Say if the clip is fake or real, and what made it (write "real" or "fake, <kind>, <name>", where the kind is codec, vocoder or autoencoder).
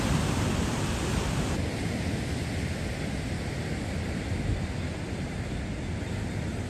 real